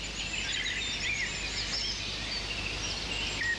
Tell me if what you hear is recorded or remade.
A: recorded